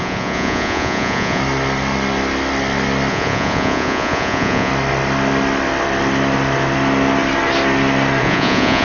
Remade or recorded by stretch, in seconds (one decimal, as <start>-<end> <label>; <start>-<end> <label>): 0.0-1.4 remade; 1.4-3.1 recorded; 3.1-4.7 remade; 4.7-8.2 recorded; 8.2-8.8 remade